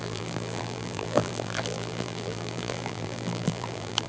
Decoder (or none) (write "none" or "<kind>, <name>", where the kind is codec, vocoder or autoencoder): vocoder, BigVGAN v2